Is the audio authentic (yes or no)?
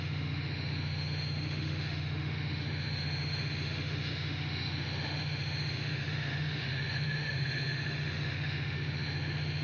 no